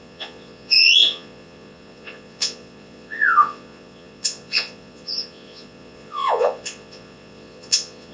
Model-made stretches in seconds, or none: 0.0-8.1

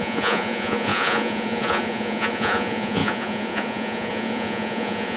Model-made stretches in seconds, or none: 0.0-5.2

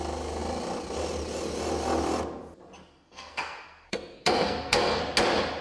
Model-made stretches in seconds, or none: 2.9-5.0

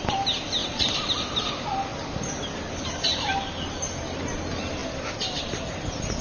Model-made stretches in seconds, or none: none

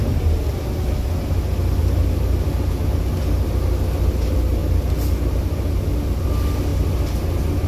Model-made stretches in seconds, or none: 1.8-3.0; 4.6-5.8

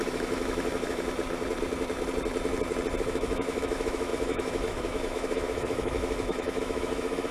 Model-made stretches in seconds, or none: 0.0-1.1; 3.0-7.3